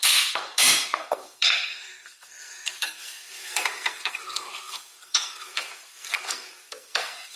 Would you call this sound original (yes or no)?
no